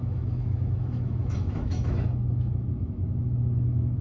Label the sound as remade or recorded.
remade